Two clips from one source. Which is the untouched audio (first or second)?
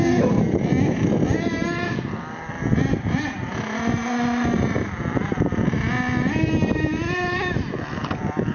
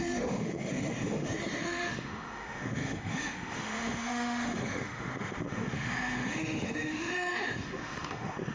first